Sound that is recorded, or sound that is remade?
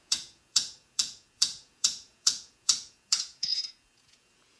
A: remade